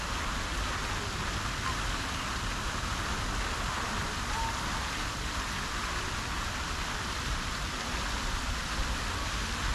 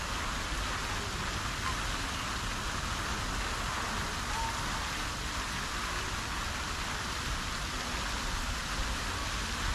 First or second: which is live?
second